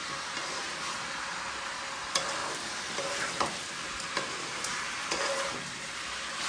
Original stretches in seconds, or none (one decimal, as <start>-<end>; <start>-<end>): 0.0-6.5

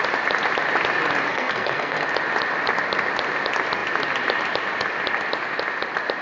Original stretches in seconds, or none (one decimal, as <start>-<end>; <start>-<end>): 0.0-1.3; 2.1-6.2

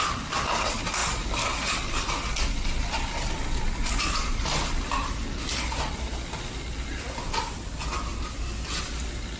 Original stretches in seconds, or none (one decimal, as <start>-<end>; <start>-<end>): 0.0-9.4

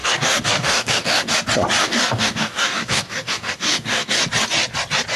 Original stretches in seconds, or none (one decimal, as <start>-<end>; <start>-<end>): 1.3-1.8; 4.2-5.2

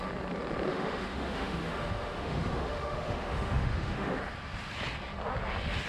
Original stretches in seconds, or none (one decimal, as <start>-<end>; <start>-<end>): 0.0-0.7; 4.2-5.9

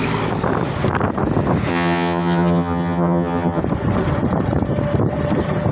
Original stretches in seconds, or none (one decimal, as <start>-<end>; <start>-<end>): 0.0-1.7; 3.6-5.7